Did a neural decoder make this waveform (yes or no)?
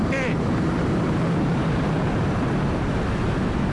yes